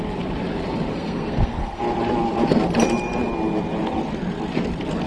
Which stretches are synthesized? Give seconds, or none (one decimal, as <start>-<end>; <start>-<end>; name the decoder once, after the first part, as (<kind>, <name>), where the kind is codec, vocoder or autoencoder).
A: 0.9-1.8 (codec, SNAC)